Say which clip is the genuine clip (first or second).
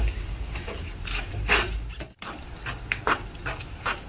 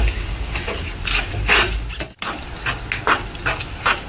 second